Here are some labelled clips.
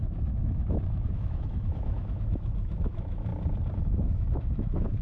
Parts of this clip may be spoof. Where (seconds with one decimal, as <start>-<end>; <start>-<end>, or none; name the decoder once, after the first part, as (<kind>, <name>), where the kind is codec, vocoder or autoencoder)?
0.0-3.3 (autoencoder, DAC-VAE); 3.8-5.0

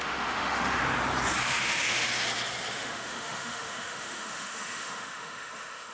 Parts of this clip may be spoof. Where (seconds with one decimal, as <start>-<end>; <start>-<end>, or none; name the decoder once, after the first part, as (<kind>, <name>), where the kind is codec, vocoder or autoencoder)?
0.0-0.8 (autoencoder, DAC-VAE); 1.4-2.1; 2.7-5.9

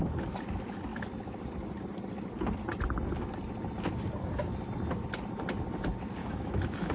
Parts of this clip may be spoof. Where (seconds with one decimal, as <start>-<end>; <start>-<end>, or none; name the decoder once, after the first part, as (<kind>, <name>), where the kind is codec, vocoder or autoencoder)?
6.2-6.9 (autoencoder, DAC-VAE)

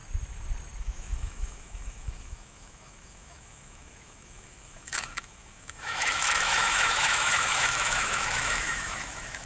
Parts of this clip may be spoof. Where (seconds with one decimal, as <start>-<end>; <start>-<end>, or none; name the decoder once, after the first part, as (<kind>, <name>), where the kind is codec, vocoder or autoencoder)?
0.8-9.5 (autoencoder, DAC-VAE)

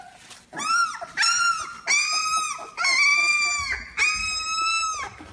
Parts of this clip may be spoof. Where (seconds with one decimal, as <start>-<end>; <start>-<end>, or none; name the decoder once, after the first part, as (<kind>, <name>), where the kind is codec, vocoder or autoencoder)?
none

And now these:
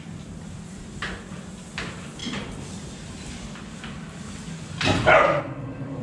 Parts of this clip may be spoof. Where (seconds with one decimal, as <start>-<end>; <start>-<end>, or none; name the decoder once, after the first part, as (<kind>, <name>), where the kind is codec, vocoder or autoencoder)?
none

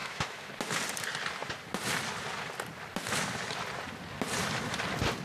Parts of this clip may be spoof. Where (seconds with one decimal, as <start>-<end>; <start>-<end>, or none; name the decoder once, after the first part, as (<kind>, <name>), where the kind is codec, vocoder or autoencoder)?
0.0-0.5 (autoencoder, DAC-VAE)

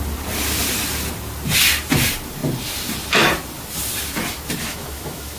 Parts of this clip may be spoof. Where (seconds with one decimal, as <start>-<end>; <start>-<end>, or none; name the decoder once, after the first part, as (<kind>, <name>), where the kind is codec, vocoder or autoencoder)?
4.6-5.4 (autoencoder, DAC-VAE)